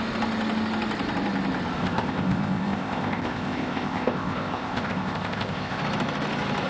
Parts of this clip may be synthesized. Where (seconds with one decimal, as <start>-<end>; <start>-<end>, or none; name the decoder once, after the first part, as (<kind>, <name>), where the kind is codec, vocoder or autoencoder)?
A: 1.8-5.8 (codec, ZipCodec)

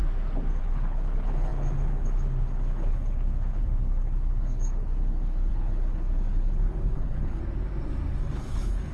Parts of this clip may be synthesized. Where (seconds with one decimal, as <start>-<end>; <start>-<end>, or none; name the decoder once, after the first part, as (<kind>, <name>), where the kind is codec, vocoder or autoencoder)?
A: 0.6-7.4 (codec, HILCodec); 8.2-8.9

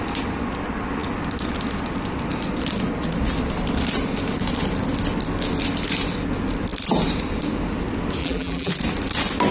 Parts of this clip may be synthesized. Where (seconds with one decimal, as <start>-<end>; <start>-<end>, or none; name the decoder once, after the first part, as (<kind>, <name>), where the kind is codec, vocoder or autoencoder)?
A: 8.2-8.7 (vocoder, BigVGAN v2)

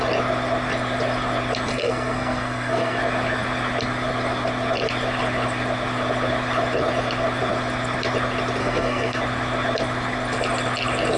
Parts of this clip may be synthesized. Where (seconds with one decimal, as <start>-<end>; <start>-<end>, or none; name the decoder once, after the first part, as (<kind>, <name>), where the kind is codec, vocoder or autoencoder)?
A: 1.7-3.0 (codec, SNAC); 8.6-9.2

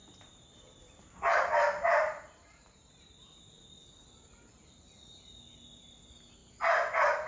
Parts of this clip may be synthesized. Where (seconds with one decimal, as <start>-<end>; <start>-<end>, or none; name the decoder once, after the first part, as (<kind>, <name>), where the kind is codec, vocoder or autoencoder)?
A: 0.0-2.9 (vocoder, BigVGAN v2)